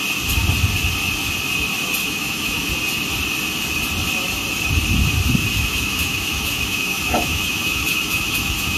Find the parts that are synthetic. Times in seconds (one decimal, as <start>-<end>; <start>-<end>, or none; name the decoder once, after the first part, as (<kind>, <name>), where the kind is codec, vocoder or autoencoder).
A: 2.0-2.7 (autoencoder, DAC-VAE); 5.4-8.8